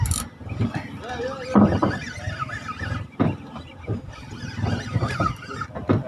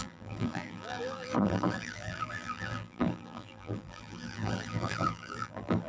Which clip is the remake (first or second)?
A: second